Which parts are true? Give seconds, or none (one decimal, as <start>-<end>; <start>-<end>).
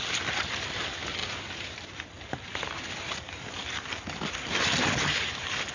0.0-5.7